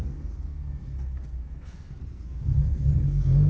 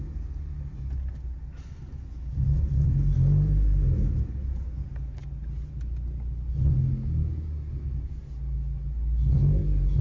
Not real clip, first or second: first